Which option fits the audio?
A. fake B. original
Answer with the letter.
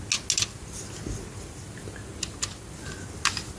B